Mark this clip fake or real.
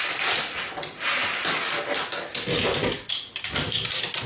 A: real